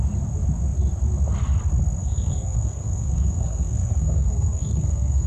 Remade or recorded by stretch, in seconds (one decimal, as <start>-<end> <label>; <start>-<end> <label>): 0.0-2.0 recorded; 2.0-5.3 remade